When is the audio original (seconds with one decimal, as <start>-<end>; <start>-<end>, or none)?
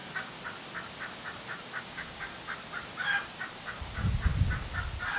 0.0-1.8; 2.3-3.6; 4.3-5.2